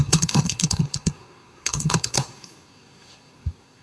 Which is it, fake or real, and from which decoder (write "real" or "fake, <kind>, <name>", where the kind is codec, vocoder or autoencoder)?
fake, codec, SNAC